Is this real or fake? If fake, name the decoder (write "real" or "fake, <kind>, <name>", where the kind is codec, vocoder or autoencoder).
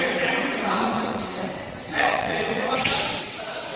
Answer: fake, vocoder, WaveNeXt